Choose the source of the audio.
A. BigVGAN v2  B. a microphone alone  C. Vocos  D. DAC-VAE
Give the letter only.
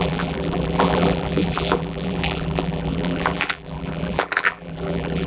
A